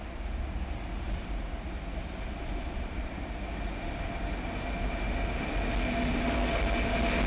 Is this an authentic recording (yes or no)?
yes